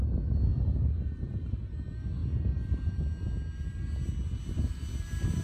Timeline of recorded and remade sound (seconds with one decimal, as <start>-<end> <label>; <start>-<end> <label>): 0.0-0.5 recorded; 0.5-1.7 remade; 1.7-5.4 recorded